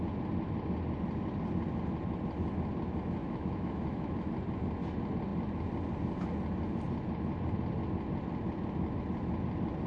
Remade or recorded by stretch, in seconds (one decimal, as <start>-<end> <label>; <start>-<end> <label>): 0.0-3.2 recorded; 3.2-4.3 remade; 4.3-9.9 recorded